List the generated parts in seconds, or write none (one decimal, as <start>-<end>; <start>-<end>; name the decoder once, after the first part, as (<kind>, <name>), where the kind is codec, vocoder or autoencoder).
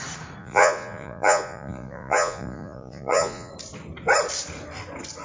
0.4-3.5 (vocoder, Vocos)